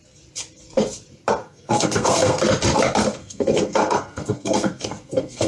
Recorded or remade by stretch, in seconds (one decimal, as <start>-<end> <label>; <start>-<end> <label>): 0.0-1.4 recorded; 1.4-2.4 remade; 2.4-3.2 recorded; 3.2-5.5 remade

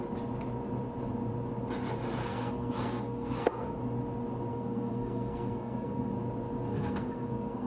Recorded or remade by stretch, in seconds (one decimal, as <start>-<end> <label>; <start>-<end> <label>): 0.0-2.2 recorded; 2.2-3.8 remade; 3.8-4.5 recorded; 4.5-6.1 remade; 6.1-6.7 recorded; 6.7-7.7 remade